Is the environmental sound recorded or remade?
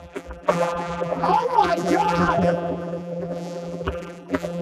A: remade